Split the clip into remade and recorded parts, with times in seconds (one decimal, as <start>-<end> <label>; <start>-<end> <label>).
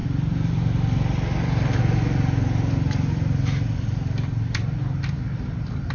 0.0-1.8 remade; 1.8-5.9 recorded